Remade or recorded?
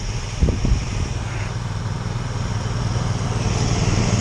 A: recorded